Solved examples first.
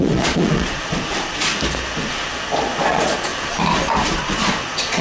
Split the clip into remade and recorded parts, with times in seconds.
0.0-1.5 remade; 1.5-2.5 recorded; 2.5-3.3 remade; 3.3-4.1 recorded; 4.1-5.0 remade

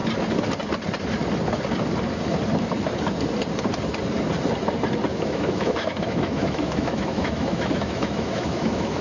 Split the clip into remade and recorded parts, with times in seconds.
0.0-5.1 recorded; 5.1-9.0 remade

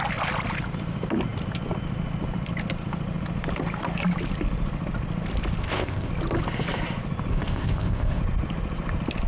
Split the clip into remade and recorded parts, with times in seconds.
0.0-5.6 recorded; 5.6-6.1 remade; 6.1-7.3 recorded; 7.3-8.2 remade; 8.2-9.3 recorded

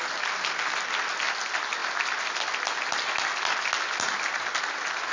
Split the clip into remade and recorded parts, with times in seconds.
0.0-5.1 recorded

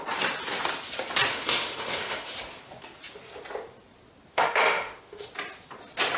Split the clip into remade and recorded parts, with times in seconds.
0.0-1.3 recorded; 1.3-2.3 remade; 2.3-4.3 recorded; 4.3-5.3 remade; 5.3-6.2 recorded

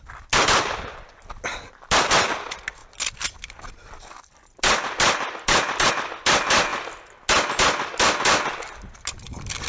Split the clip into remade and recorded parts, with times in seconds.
0.0-9.7 recorded